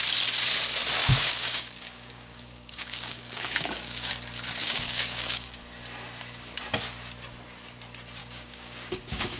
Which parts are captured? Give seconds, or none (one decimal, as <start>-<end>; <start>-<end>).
0.0-1.0; 4.1-4.6; 5.6-8.2

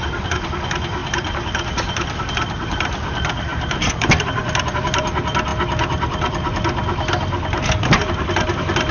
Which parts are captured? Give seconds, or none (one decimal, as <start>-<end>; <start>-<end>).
0.0-8.9

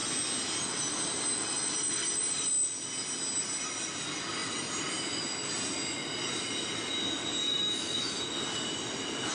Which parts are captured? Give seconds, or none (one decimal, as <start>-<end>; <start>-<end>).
0.0-7.4; 8.2-9.3

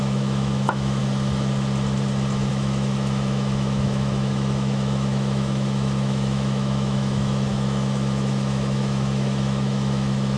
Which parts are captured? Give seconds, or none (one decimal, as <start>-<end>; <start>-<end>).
1.0-2.5

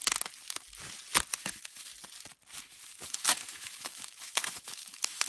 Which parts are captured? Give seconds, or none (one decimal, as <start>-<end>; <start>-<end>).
0.0-1.4; 1.9-2.6

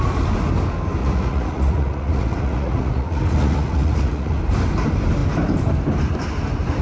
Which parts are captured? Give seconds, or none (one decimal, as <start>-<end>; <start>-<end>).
0.0-1.0; 4.4-6.8

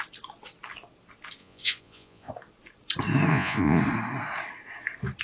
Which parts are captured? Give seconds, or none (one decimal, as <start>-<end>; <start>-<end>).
0.0-1.4; 2.3-3.3; 3.8-5.2

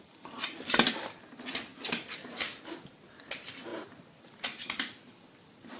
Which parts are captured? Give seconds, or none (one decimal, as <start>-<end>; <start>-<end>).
none